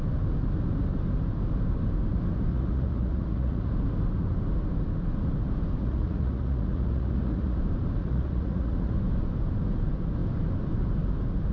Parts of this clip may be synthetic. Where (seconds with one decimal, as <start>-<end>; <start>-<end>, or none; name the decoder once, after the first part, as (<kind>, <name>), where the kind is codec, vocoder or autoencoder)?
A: 2.5-3.7 (vocoder, Vocos); 5.8-7.6; 8.0-8.9